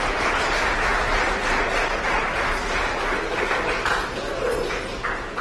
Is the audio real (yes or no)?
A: yes